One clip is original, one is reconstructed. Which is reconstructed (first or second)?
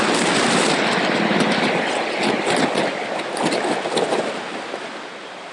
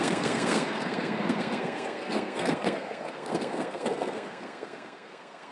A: second